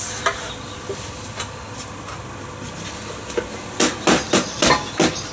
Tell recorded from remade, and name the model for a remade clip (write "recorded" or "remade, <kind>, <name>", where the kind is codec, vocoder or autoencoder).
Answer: recorded